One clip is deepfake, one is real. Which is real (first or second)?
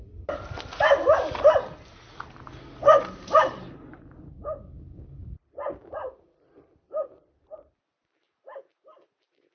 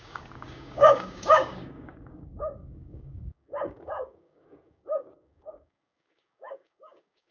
first